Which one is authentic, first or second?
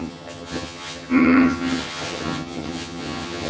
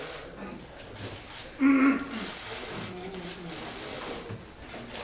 second